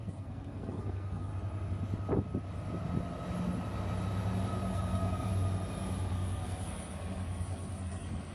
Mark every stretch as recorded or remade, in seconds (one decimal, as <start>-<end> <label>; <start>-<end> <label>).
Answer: 0.0-1.3 remade; 1.3-4.7 recorded; 4.7-5.3 remade; 5.3-6.1 recorded; 6.1-8.3 remade